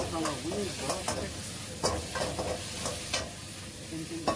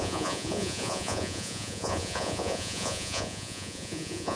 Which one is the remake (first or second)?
second